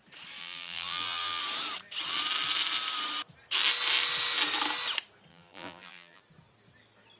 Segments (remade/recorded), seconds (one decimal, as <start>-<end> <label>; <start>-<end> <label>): 0.0-0.4 recorded; 0.4-1.4 remade; 1.4-5.3 recorded; 5.3-6.2 remade; 6.2-7.2 recorded